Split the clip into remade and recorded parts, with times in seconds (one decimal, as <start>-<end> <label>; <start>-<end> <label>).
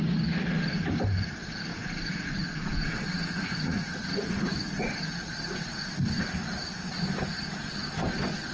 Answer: 0.0-1.7 recorded; 1.7-5.8 remade; 5.8-8.5 recorded